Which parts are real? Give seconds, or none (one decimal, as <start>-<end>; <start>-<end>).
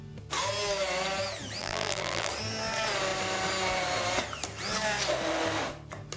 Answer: 0.0-1.6; 2.3-6.2